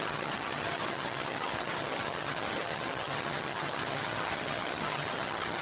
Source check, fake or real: fake